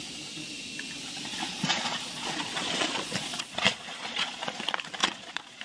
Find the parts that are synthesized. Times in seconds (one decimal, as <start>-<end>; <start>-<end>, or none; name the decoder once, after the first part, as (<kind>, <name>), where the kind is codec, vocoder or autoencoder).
1.3-4.6 (vocoder, Vocos); 5.0-5.6